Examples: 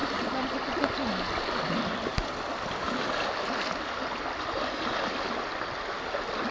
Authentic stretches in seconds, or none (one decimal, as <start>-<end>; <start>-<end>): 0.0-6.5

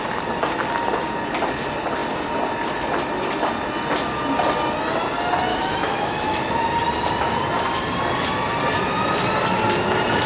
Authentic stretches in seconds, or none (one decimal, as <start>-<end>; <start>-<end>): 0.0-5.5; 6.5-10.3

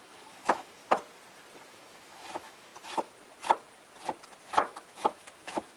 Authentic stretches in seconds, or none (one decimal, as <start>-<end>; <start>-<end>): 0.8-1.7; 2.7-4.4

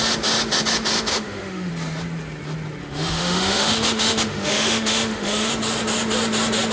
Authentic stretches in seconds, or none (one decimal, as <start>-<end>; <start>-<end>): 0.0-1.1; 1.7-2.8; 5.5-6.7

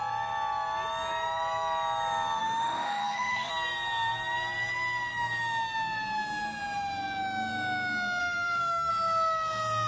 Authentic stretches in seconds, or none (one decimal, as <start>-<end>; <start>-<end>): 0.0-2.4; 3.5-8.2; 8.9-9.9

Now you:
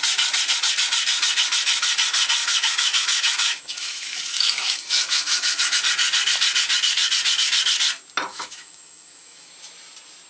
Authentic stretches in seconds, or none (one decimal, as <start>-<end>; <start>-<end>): 0.0-2.4; 5.8-8.3; 9.5-10.3

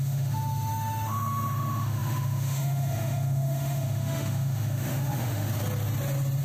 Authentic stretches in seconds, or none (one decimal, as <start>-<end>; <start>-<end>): 5.5-6.4